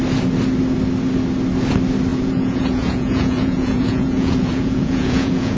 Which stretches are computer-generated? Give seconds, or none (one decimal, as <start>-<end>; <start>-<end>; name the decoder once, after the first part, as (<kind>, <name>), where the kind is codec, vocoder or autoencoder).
2.1-5.6 (vocoder, Vocos)